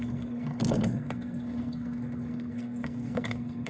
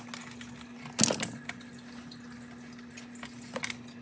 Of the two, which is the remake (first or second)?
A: first